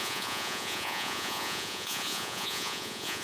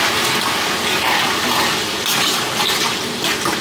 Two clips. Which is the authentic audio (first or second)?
second